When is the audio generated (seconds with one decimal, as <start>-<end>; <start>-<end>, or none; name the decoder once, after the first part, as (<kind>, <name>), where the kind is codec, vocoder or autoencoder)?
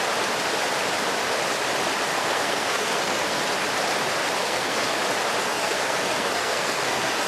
2.1-3.4 (codec, SNAC); 4.4-5.0; 5.4-7.3